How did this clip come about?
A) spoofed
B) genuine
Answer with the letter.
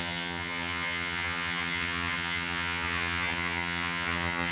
A